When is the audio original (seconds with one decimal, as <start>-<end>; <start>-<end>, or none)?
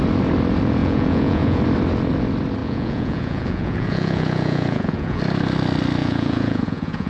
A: 0.0-0.8; 1.6-2.6; 5.2-6.0